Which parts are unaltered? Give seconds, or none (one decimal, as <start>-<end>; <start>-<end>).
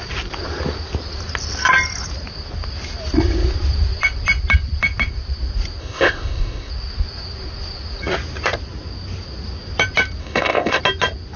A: 0.0-5.8; 6.7-10.2; 10.8-11.4